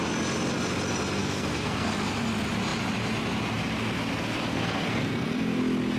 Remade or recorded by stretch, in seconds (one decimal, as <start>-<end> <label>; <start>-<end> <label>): 0.0-1.2 recorded; 1.2-1.9 remade; 1.9-4.5 recorded; 4.5-5.6 remade; 5.6-6.0 recorded